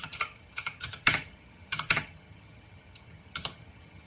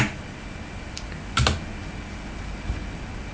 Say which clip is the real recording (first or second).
second